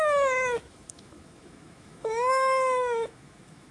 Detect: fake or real fake